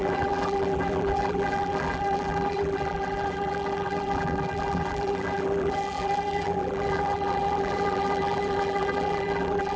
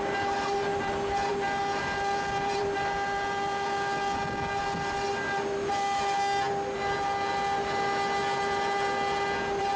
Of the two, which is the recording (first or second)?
second